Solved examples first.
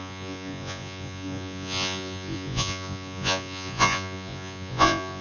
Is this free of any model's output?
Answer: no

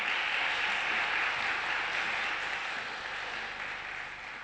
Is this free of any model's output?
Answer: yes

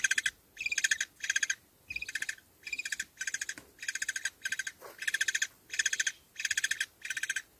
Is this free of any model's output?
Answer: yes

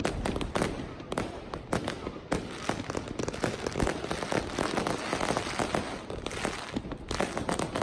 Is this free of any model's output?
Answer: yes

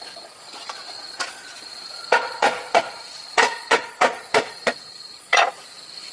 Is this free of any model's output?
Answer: no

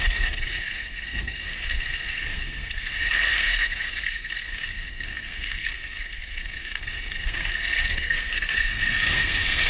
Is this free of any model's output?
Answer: no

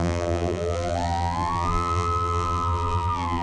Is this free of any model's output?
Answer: no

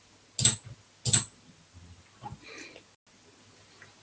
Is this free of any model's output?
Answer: yes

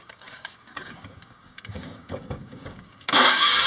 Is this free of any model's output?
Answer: no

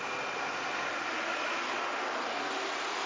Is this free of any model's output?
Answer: yes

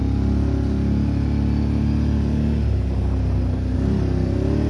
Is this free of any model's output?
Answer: yes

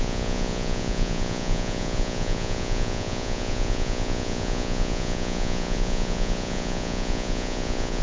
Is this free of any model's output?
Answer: no